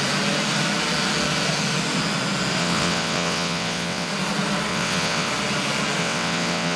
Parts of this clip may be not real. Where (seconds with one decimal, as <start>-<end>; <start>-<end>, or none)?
2.6-4.1; 4.7-5.3; 6.0-6.8